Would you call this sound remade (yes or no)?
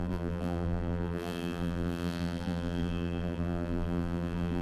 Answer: yes